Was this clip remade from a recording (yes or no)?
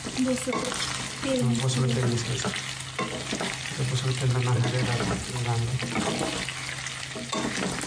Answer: no